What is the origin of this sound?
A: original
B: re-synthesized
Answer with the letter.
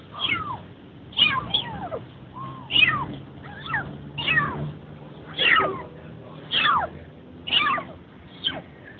A